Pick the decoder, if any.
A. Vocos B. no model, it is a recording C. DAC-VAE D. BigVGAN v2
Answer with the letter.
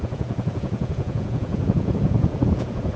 A